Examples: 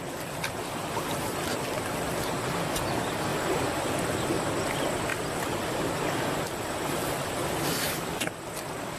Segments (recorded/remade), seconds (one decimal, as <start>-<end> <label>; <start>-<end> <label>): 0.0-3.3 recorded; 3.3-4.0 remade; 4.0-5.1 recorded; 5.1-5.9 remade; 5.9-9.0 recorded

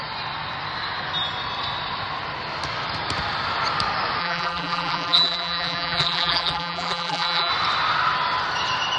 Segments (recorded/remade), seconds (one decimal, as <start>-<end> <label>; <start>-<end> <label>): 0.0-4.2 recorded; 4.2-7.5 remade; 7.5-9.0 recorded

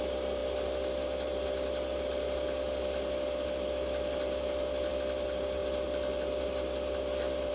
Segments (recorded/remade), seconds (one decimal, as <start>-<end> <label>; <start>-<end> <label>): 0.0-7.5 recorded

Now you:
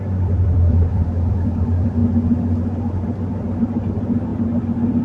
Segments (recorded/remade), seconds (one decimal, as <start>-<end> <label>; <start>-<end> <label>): 0.0-2.0 remade; 2.0-2.9 recorded; 2.9-5.0 remade